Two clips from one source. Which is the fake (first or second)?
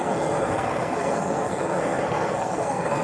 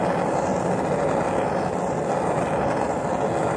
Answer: first